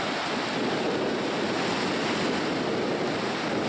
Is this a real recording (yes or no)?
yes